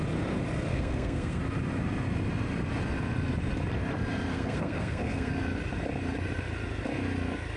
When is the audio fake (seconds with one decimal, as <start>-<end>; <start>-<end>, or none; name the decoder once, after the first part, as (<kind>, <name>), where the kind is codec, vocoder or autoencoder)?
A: 0.7-1.4 (codec, SNAC); 4.3-5.3